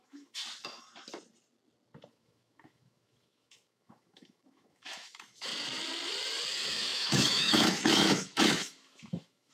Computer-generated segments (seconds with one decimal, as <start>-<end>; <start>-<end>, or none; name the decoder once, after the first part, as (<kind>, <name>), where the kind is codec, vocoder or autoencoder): 0.0-0.4 (autoencoder, DAC-VAE); 2.1-5.5; 6.5-9.5